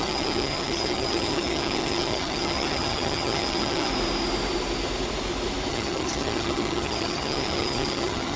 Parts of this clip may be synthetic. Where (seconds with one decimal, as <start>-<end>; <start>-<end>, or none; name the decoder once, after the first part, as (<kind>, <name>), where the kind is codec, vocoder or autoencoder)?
0.0-3.9 (vocoder, HiFi-GAN); 5.7-8.4